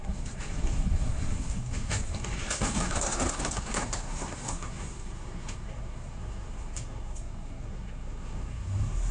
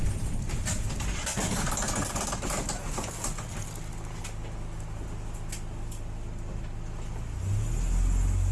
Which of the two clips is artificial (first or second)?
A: first